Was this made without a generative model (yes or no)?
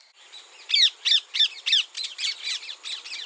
yes